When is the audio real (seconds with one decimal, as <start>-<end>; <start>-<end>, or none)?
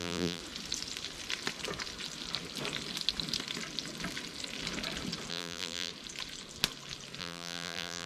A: 0.4-5.3; 5.9-7.2